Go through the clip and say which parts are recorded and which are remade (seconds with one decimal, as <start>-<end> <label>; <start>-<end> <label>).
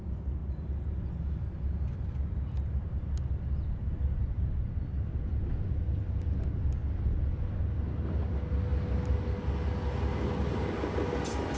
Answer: 0.0-11.6 recorded